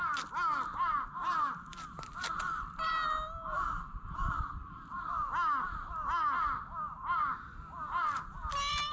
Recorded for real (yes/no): yes